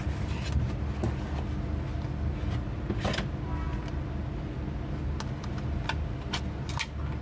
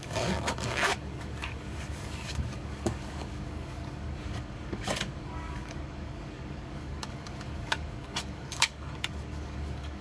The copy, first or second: second